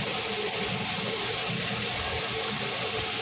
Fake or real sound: real